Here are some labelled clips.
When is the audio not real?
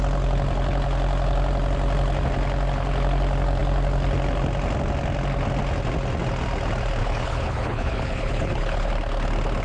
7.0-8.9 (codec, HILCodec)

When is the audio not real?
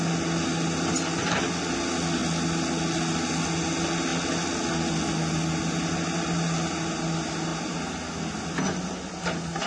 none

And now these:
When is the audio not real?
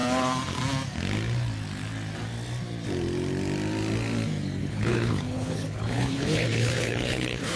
4.6-7.6 (codec, HILCodec)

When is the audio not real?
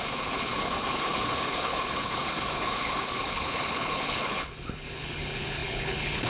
0.0-6.3 (codec, HILCodec)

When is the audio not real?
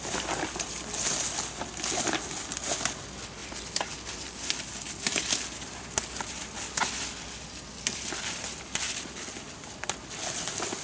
none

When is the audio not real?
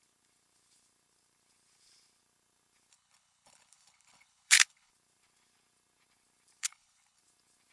2.9-4.9 (codec, HILCodec); 6.6-7.2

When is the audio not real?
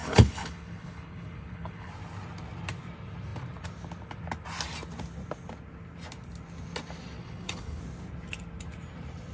0.0-1.9 (codec, HILCodec); 7.2-7.8